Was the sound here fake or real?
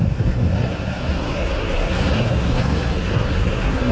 fake